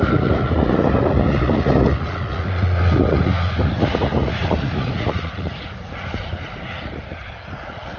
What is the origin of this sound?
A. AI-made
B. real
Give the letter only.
A